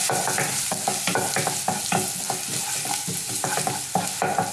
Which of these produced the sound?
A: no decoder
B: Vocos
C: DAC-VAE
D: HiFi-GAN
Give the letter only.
A